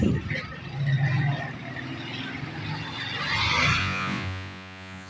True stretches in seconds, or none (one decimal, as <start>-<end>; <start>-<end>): 0.0-3.8